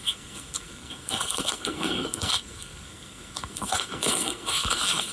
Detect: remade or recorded remade